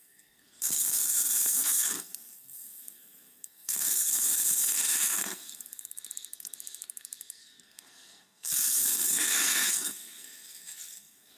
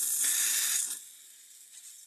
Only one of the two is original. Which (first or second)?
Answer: second